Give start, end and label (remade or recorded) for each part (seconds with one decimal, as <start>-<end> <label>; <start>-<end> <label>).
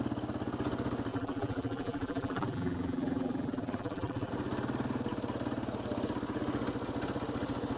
0.0-1.1 recorded; 1.1-4.3 remade; 4.3-7.8 recorded